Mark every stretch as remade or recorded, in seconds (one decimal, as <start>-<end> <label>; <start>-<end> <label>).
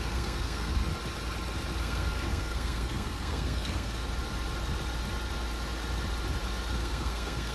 0.0-0.8 remade; 0.8-1.8 recorded; 1.8-4.0 remade; 4.0-6.7 recorded; 6.7-7.5 remade